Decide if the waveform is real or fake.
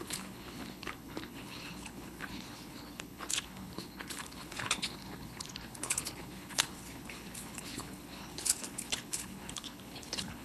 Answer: fake